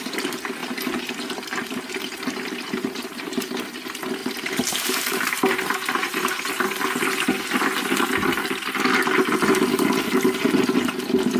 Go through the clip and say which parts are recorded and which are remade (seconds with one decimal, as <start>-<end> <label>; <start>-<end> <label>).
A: 0.0-0.6 recorded; 0.6-3.5 remade; 3.5-4.2 recorded; 4.2-6.5 remade; 6.5-11.4 recorded